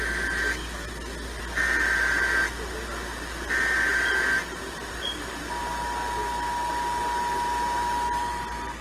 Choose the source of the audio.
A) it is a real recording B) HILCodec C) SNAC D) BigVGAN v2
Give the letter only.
A